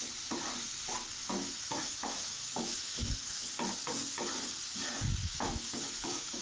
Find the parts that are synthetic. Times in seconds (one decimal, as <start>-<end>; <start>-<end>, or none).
1.2-3.5; 5.2-6.4